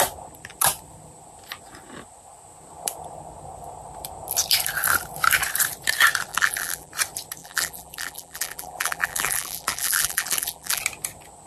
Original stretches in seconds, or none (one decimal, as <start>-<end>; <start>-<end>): 0.0-6.3; 6.9-7.4; 10.8-11.5